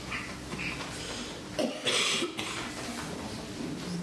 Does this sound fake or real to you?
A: real